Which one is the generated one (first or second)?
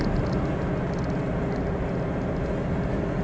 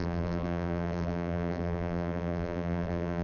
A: second